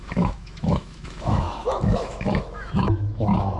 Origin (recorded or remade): remade